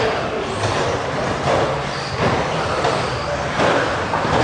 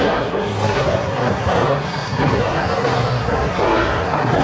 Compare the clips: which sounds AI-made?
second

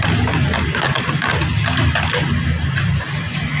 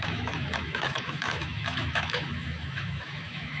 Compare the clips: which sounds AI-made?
second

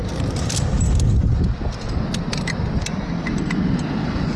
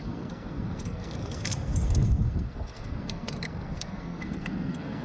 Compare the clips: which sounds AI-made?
second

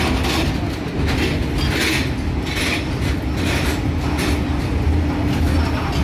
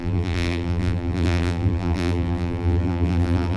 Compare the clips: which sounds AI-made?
second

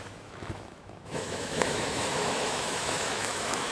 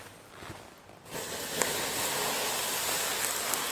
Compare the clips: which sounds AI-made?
first